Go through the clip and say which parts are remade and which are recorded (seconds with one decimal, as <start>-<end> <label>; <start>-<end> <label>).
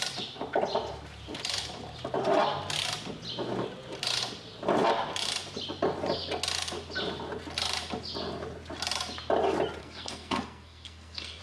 0.0-9.8 recorded; 9.8-11.4 remade